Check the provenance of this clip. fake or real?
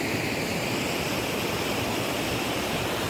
real